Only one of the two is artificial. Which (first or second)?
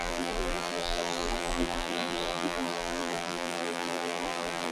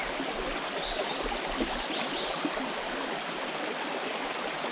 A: first